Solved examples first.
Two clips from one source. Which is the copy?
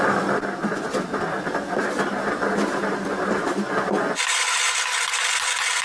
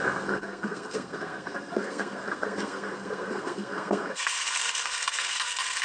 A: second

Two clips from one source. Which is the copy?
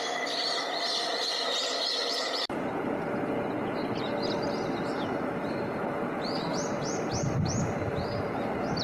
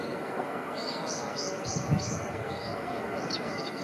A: second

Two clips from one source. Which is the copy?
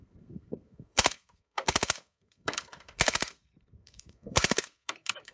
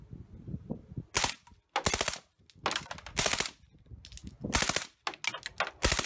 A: first